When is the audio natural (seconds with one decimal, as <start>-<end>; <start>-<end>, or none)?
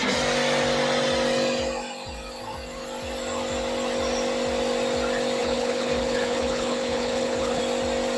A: 0.0-5.4; 7.6-8.2